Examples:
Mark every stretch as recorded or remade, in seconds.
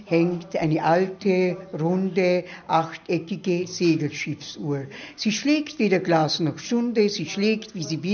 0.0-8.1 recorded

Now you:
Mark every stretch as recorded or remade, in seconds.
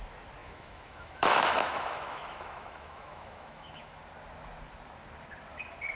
0.0-0.4 recorded; 0.4-4.0 remade; 4.0-6.0 recorded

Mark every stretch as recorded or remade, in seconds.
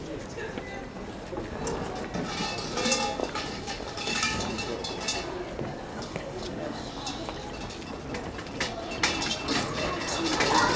0.0-3.2 recorded; 3.2-4.4 remade; 4.4-5.9 recorded; 5.9-6.9 remade; 6.9-10.8 recorded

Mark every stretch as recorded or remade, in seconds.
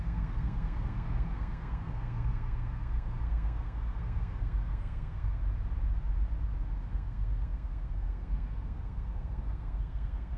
0.0-5.4 remade; 5.4-6.9 recorded; 6.9-10.4 remade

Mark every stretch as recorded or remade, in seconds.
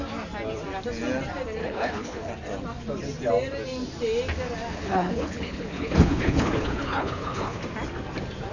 0.0-1.6 recorded; 1.6-2.3 remade; 2.3-4.7 recorded; 4.7-7.6 remade; 7.6-8.5 recorded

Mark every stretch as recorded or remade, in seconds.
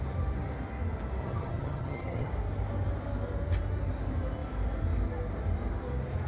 0.0-1.2 recorded; 1.2-2.3 remade; 2.3-6.3 recorded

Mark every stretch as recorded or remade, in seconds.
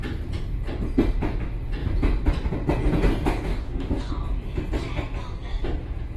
0.0-3.5 recorded; 3.5-4.1 remade; 4.1-6.2 recorded